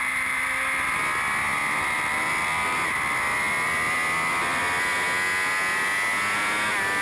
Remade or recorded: recorded